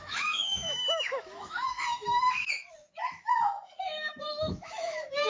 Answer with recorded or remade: remade